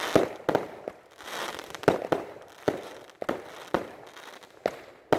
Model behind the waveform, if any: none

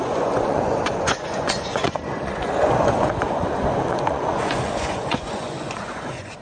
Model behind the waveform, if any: vocoder, Vocos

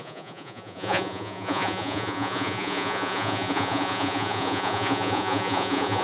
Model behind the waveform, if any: vocoder, Vocos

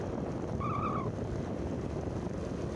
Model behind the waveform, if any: none